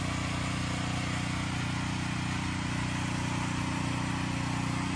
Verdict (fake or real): real